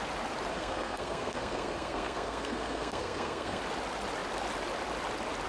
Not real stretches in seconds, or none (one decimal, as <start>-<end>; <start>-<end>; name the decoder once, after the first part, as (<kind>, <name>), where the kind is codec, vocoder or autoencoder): 0.5-3.6 (codec, SNAC)